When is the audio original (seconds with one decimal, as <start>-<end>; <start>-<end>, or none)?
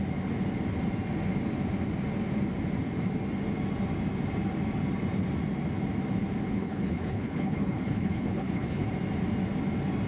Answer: 0.0-6.5; 8.9-10.1